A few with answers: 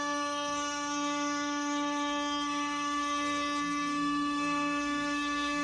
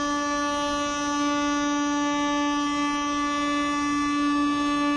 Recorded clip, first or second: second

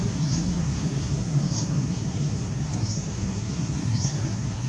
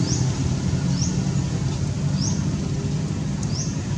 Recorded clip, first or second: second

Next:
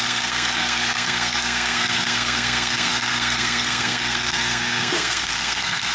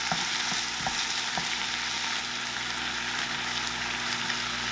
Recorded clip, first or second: second